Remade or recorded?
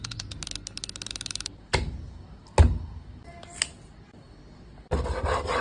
recorded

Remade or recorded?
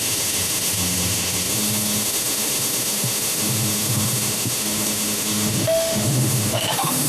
remade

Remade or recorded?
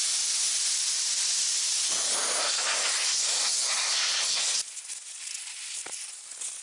recorded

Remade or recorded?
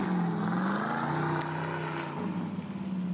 recorded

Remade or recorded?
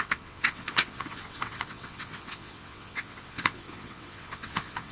remade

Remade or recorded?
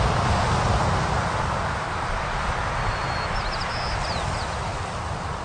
recorded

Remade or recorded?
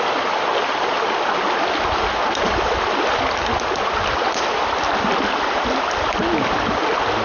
recorded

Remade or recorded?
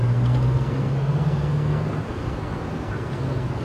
remade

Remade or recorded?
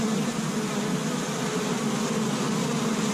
recorded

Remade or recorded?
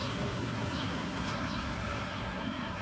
remade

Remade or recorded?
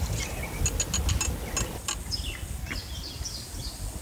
recorded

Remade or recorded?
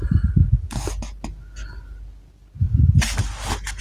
recorded